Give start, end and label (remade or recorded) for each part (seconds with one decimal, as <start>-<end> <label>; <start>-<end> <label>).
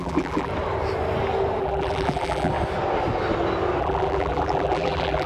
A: 0.0-0.5 remade; 0.5-1.6 recorded; 1.6-2.5 remade; 2.5-3.8 recorded; 3.8-5.3 remade